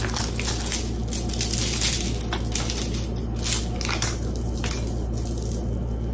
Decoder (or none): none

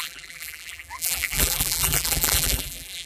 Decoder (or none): vocoder, BigVGAN v2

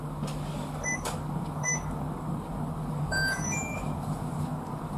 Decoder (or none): codec, DAC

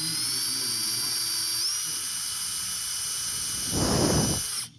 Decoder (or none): none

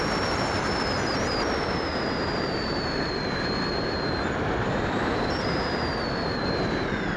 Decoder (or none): vocoder, BigVGAN v2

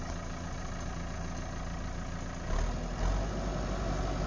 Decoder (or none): none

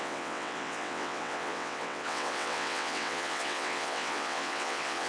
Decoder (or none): vocoder, WaveNeXt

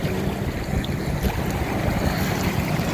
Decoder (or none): none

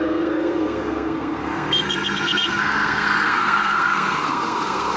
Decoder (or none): codec, SNAC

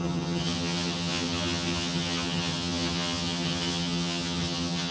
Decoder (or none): vocoder, HiFi-GAN